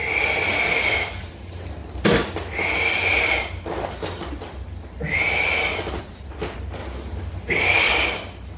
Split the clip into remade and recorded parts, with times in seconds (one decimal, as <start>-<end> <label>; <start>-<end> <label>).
0.0-0.8 recorded; 0.8-1.8 remade; 1.8-6.0 recorded; 6.0-6.8 remade; 6.8-7.5 recorded; 7.5-8.6 remade

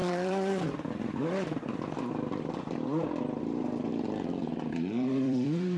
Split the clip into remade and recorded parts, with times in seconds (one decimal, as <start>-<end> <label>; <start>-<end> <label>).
0.0-5.8 remade

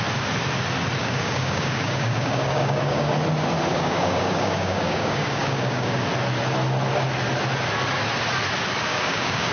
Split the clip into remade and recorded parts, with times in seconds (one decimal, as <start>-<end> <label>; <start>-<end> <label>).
0.0-1.0 recorded; 1.0-3.1 remade; 3.1-3.7 recorded; 3.7-6.0 remade; 6.0-8.9 recorded; 8.9-9.5 remade

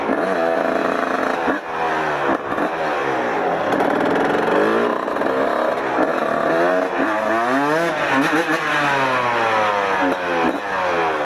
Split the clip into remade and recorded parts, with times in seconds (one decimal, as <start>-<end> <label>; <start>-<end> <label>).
0.0-11.2 recorded

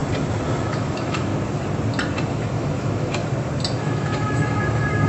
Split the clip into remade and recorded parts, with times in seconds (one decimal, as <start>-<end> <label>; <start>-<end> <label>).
0.0-0.6 recorded; 0.6-1.3 remade; 1.3-2.3 recorded; 2.3-3.2 remade; 3.2-3.8 recorded; 3.8-5.1 remade

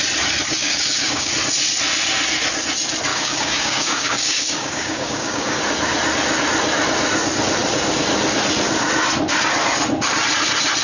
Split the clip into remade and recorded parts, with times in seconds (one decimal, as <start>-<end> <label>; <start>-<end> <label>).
0.0-0.6 recorded; 0.6-1.3 remade; 1.3-3.1 recorded; 3.1-5.6 remade; 5.6-10.8 recorded

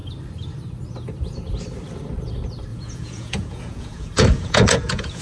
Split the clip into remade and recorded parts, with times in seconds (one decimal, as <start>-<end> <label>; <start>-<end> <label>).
0.0-2.7 recorded; 2.7-5.2 remade